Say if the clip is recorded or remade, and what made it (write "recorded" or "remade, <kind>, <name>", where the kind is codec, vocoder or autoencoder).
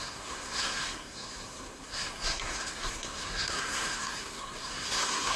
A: remade, codec, SNAC